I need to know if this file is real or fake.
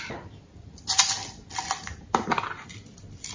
real